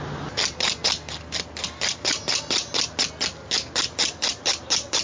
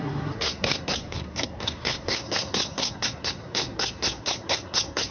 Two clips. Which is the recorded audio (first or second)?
first